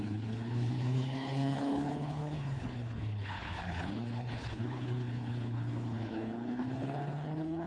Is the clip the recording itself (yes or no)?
no